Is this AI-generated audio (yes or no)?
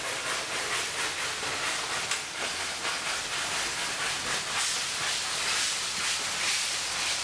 no